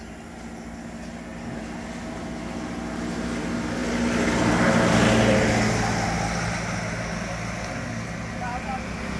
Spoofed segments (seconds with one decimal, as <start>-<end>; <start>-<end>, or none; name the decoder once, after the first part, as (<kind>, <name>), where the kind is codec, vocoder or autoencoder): none